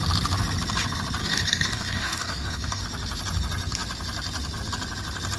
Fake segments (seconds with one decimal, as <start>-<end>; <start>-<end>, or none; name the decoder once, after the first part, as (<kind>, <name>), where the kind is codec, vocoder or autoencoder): 1.2-2.8 (codec, DAC)